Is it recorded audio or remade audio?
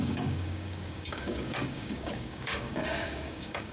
remade